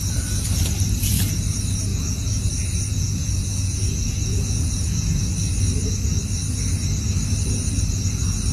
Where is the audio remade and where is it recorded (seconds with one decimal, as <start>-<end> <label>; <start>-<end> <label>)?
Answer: 0.0-1.9 recorded; 1.9-5.2 remade; 5.2-8.5 recorded